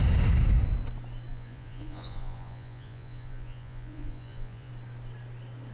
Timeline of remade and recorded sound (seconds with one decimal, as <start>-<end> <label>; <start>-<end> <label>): 0.0-1.3 recorded; 1.3-4.7 remade; 4.7-5.7 recorded

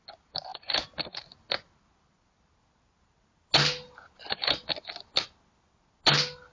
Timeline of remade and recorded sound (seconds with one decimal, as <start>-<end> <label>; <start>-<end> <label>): 0.0-6.5 recorded

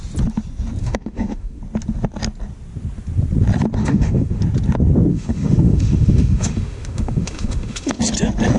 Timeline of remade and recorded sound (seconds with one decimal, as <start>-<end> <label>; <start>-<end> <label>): 0.0-0.8 recorded; 0.8-1.6 remade; 1.6-3.8 recorded; 3.8-4.4 remade; 4.4-5.1 recorded; 5.1-8.0 remade; 8.0-8.6 recorded

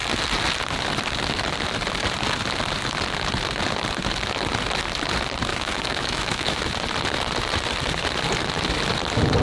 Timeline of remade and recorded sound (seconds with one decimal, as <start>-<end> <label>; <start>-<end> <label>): 0.0-5.5 recorded; 5.5-6.6 remade; 6.6-9.4 recorded

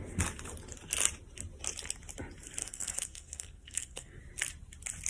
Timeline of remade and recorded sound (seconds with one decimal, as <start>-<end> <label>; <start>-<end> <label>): 0.0-2.6 recorded; 2.6-4.2 remade; 4.2-5.1 recorded

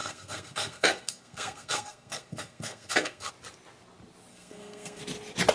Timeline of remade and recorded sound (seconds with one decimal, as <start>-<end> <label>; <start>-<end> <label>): 0.0-3.3 remade; 3.3-4.3 recorded; 4.3-5.0 remade; 5.0-5.5 recorded

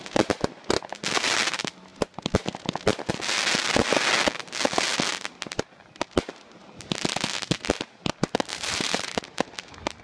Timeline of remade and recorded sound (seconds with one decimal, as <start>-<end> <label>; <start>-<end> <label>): 0.0-8.5 recorded; 8.5-9.2 remade; 9.2-10.0 recorded

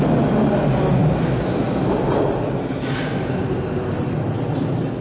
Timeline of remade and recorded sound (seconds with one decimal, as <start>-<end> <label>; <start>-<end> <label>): 0.0-5.0 recorded